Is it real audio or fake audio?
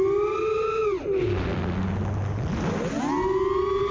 real